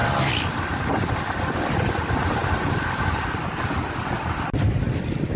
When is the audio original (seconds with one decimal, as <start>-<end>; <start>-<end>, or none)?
2.4-2.9